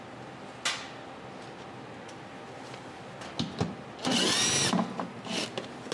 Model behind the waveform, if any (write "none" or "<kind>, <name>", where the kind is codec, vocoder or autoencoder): none